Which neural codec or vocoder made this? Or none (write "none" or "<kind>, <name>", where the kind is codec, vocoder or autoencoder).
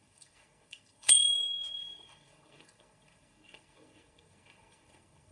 codec, SNAC